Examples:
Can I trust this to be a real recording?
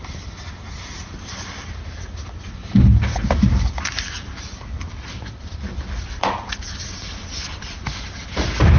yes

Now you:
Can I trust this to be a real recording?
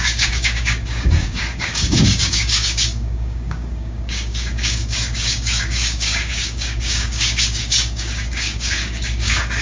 no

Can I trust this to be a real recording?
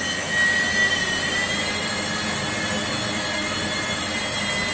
yes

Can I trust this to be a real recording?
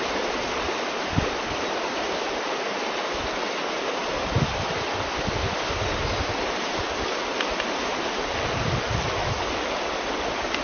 yes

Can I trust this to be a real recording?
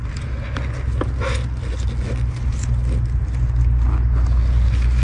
yes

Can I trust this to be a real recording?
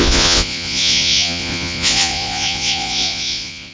no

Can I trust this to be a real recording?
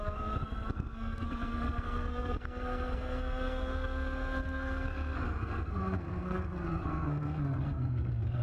no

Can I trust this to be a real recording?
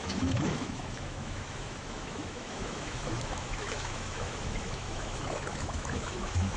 no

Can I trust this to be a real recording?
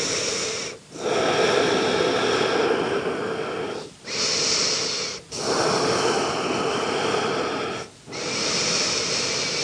yes